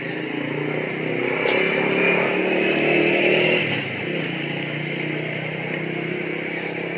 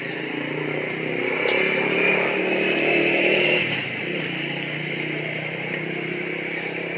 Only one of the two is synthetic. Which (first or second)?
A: second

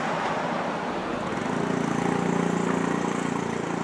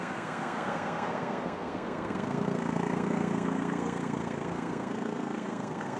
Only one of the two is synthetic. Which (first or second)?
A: second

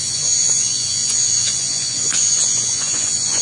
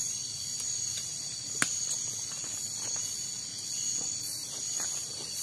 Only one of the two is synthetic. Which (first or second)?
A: first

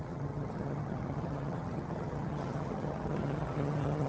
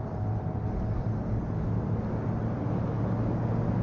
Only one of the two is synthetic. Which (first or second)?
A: first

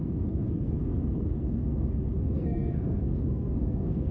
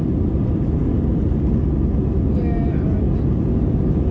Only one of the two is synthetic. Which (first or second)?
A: first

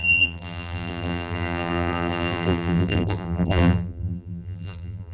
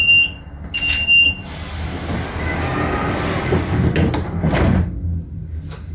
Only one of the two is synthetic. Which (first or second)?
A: first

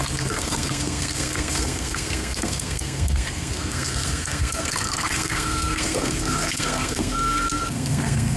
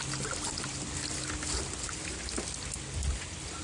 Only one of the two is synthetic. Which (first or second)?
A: first